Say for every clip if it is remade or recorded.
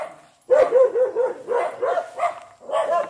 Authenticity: recorded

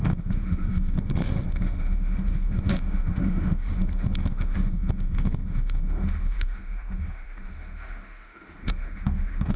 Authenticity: remade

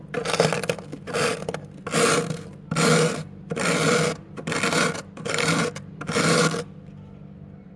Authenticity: recorded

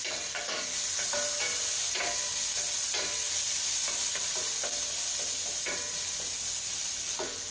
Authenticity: recorded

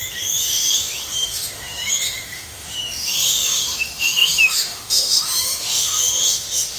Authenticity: remade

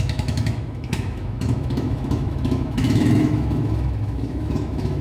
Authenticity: remade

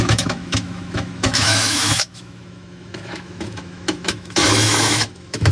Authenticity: remade